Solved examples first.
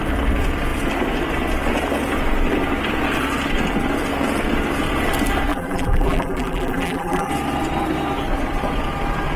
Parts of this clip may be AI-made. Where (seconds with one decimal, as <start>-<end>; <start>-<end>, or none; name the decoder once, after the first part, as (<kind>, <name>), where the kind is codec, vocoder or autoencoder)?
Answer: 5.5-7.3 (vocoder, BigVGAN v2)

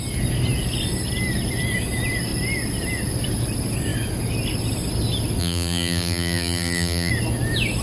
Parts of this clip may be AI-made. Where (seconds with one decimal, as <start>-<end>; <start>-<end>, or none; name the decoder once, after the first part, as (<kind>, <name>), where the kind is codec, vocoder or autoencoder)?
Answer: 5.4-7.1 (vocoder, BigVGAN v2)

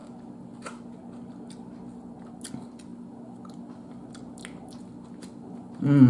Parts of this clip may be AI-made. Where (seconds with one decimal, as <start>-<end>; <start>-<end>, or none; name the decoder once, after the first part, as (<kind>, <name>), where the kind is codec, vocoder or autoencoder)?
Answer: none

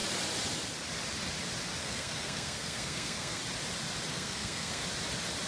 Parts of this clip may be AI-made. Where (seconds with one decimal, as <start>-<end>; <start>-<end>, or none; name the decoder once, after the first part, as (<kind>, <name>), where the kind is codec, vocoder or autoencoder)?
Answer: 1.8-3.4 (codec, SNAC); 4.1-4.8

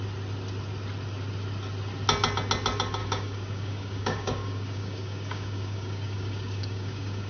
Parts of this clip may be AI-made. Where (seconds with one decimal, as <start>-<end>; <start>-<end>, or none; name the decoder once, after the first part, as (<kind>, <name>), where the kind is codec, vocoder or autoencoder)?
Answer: 3.0-7.3 (codec, DAC)

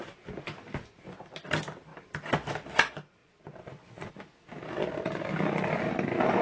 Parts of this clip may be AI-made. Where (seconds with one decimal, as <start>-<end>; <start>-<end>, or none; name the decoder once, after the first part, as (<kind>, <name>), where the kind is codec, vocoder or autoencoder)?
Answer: 3.2-4.1 (vocoder, Vocos)

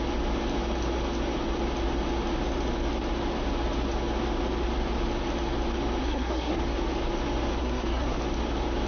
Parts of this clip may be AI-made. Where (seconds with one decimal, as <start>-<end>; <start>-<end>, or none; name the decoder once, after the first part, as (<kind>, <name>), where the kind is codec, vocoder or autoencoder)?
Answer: 6.0-6.6 (codec, SNAC); 7.6-8.2